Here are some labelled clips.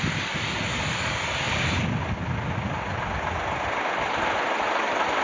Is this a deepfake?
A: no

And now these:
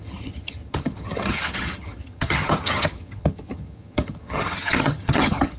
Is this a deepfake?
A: yes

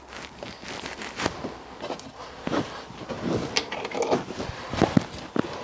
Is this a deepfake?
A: no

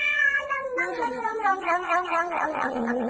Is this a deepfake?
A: yes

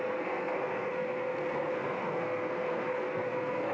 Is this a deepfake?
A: yes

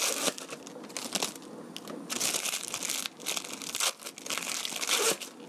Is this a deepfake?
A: no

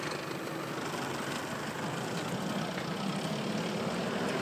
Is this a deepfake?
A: no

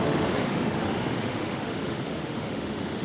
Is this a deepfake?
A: yes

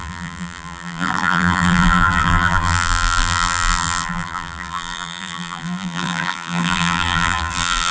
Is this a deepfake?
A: yes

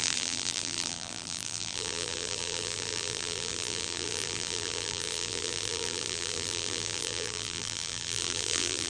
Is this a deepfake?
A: yes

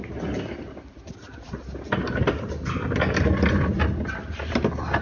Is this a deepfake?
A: no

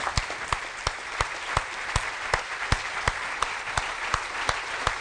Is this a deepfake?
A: no